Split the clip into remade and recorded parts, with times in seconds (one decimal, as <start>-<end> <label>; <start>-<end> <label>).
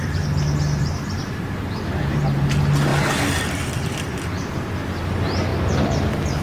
0.0-0.8 recorded; 0.8-2.5 remade; 2.5-6.4 recorded